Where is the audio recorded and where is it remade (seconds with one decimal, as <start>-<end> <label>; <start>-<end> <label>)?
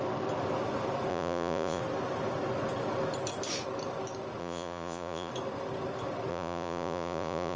0.0-1.1 recorded; 1.1-1.8 remade; 1.8-4.4 recorded; 4.4-5.3 remade; 5.3-6.3 recorded; 6.3-7.6 remade